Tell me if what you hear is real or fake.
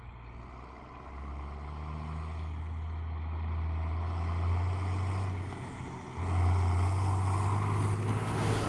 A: real